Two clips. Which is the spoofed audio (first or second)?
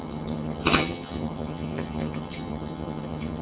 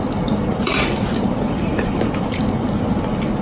first